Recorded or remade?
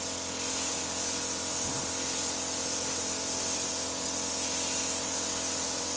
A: recorded